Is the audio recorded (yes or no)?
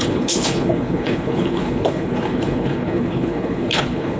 no